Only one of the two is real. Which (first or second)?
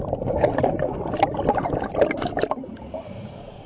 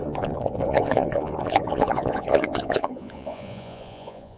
first